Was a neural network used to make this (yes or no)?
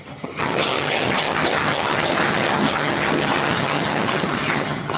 yes